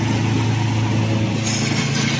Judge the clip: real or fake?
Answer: real